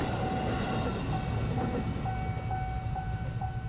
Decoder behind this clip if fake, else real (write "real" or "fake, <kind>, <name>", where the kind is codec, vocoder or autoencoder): real